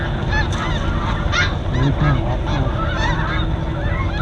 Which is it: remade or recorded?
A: recorded